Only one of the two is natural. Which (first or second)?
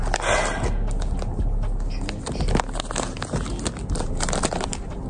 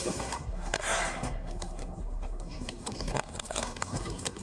first